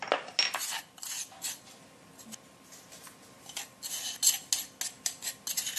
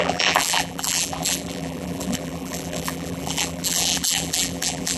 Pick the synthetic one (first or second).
second